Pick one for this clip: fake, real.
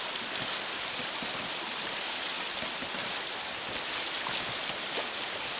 real